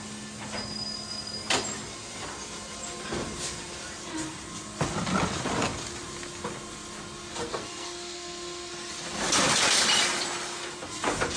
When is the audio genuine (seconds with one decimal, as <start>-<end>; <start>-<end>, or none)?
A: 0.0-7.3; 8.7-11.4